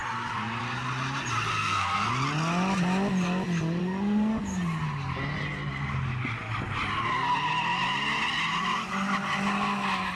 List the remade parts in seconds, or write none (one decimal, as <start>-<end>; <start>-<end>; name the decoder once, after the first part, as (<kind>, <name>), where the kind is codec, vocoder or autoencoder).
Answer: 1.5-2.1 (codec, SNAC); 3.8-4.3